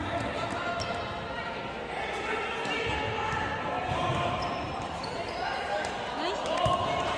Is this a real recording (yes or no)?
yes